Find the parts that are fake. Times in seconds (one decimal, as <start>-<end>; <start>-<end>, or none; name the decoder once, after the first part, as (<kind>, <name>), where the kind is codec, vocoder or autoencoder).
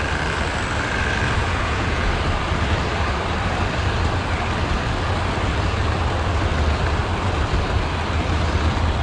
1.4-2.1 (vocoder, Vocos)